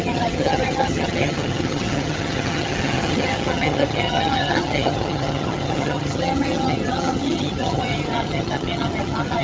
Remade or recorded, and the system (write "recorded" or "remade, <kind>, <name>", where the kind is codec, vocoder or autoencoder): remade, vocoder, HiFi-GAN